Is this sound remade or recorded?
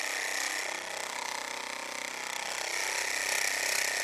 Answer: recorded